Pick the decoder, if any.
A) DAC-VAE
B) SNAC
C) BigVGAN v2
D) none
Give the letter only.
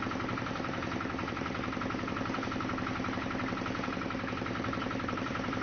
C